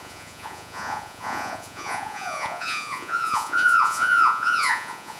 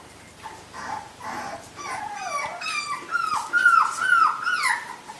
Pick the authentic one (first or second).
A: second